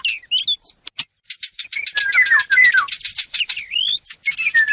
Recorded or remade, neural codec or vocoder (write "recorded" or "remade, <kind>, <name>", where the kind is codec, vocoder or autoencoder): recorded